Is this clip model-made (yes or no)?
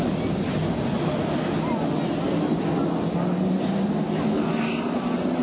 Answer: no